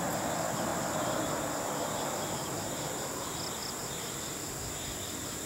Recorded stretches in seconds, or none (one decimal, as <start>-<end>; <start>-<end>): 0.0-5.5